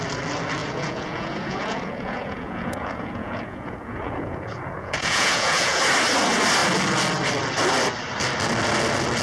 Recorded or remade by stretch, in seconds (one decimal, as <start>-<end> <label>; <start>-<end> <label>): 0.0-0.6 recorded; 0.6-5.8 remade; 5.8-9.2 recorded